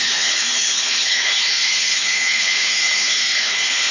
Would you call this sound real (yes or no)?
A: no